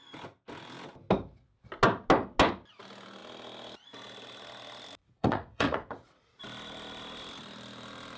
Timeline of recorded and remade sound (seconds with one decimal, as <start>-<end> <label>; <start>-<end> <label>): 0.0-5.0 recorded; 5.0-6.4 remade; 6.4-8.2 recorded

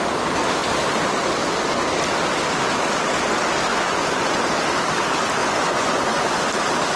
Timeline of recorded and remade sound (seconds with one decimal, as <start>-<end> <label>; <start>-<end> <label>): 0.0-3.7 recorded; 3.7-4.4 remade; 4.4-5.4 recorded; 5.4-6.4 remade; 6.4-7.0 recorded